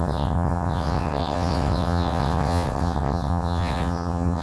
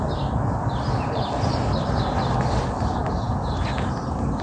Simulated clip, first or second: first